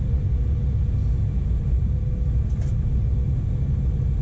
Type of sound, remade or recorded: recorded